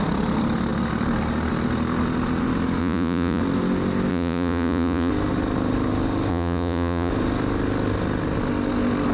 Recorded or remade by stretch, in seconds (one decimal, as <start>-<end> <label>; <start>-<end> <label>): 0.0-2.8 recorded; 2.8-3.4 remade; 3.4-4.1 recorded; 4.1-5.1 remade; 5.1-6.3 recorded; 6.3-7.1 remade; 7.1-9.1 recorded